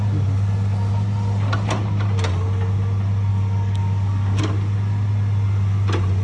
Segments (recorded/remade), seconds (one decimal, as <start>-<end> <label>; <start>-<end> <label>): 0.0-3.3 recorded; 3.3-4.4 remade; 4.4-6.2 recorded